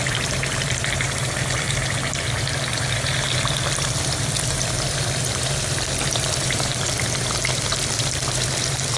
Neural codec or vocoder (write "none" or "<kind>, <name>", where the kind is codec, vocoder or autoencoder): vocoder, BigVGAN v2